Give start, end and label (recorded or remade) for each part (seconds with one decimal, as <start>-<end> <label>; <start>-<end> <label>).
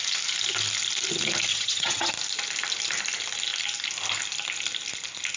0.0-1.5 recorded; 1.5-2.1 remade; 2.1-5.4 recorded